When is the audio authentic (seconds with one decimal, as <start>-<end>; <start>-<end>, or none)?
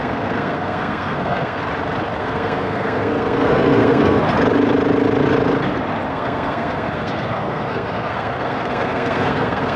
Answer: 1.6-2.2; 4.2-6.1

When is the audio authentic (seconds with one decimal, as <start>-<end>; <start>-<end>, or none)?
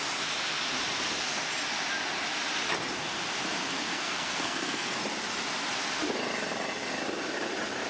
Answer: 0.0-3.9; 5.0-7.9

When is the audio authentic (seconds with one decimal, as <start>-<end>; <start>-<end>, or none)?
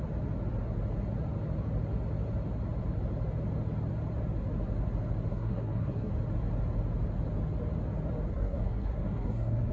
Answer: 0.0-5.3; 6.1-8.3